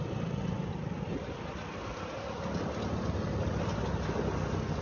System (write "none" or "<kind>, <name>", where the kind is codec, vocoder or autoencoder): none